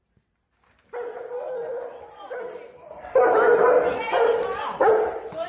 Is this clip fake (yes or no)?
no